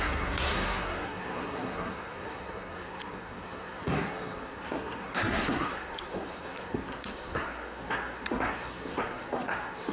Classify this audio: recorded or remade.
remade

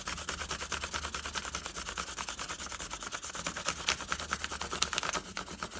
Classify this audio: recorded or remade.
recorded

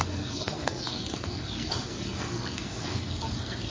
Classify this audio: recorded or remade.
remade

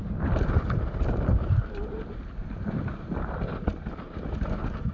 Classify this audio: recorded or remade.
recorded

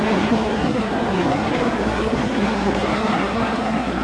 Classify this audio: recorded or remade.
remade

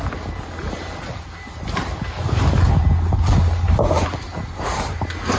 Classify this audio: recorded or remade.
recorded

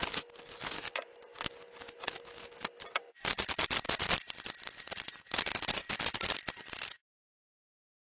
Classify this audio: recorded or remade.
recorded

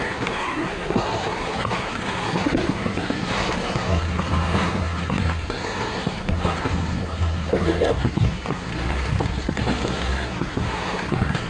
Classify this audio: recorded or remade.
remade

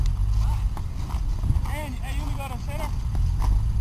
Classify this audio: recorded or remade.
recorded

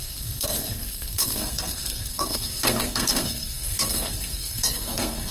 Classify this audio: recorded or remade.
remade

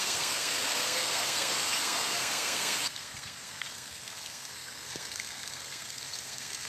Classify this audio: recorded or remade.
remade